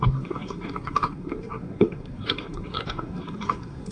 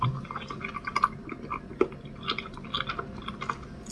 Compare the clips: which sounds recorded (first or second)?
second